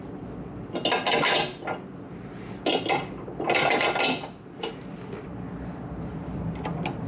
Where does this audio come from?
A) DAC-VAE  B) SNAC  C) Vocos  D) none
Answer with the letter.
D